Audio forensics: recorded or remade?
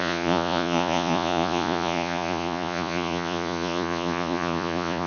remade